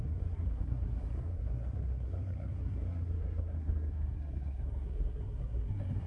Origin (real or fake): fake